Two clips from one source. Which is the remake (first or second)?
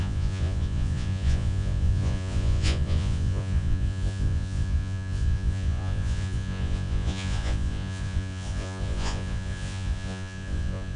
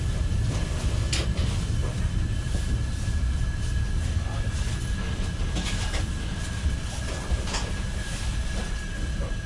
first